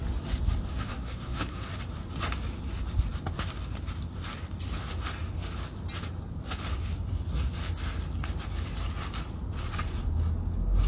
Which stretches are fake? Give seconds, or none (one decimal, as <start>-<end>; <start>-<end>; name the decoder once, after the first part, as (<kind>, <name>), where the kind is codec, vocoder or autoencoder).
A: 0.7-1.7 (codec, SNAC)